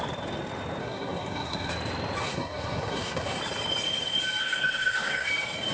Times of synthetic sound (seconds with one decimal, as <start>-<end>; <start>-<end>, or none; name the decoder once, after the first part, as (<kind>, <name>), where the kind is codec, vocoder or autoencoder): 0.8-1.7 (codec, SNAC); 2.2-3.4; 4.4-5.3